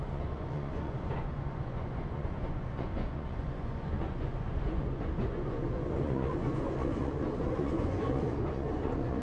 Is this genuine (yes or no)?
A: no